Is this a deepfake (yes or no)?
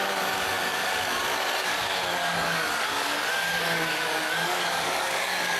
yes